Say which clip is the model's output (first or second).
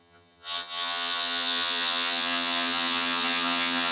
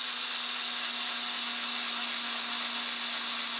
first